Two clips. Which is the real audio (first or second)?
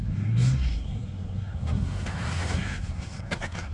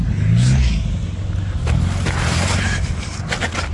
second